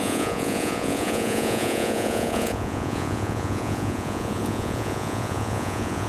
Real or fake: fake